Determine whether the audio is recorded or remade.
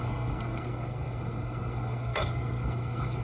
remade